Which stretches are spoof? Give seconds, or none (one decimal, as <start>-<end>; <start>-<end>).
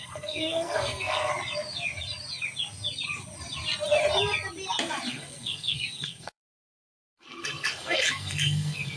0.0-1.3; 5.1-9.0